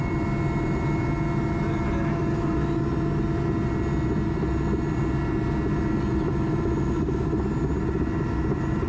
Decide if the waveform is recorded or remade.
recorded